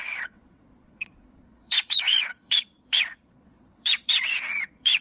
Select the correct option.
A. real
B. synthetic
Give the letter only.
B